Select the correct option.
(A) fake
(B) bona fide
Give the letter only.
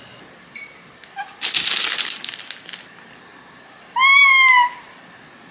B